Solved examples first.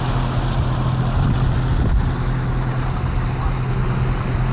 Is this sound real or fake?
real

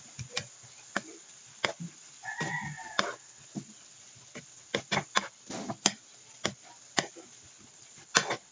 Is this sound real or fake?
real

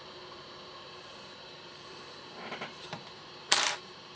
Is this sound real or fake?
fake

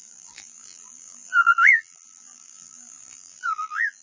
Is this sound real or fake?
fake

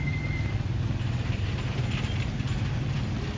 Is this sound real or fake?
real